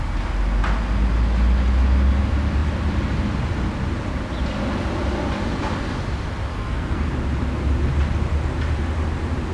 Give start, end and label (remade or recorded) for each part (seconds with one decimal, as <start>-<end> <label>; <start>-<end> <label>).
0.0-6.5 recorded; 6.5-7.1 remade; 7.1-9.5 recorded